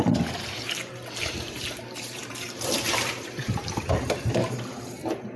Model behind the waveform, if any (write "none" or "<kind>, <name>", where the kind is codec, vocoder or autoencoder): vocoder, BigVGAN v2